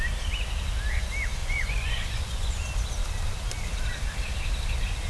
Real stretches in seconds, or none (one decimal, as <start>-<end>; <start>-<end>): 0.0-1.4; 2.6-5.1